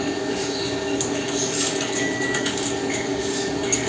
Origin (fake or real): fake